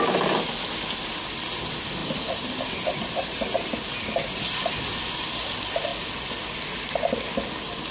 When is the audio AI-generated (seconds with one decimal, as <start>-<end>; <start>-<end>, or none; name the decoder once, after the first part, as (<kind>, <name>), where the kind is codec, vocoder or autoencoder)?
none